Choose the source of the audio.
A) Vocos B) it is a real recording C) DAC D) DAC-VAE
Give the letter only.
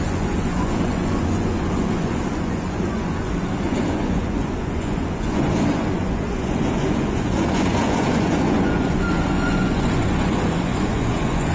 A